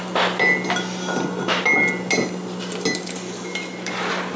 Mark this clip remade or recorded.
recorded